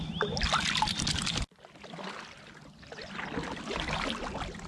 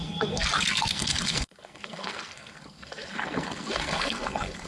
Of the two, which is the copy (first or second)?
second